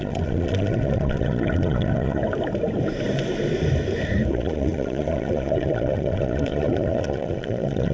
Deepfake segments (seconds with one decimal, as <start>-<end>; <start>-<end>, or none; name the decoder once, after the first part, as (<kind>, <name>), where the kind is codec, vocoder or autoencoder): 0.0-2.2 (vocoder, Vocos); 4.3-7.9